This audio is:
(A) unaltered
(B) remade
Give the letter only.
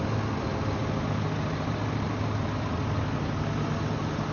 A